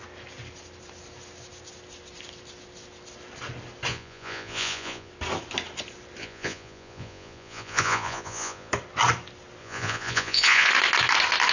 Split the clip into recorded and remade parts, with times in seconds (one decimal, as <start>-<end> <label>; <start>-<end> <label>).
0.0-3.9 recorded; 3.9-5.1 remade; 5.1-6.2 recorded; 6.2-8.7 remade; 8.7-9.6 recorded; 9.6-10.7 remade; 10.7-11.5 recorded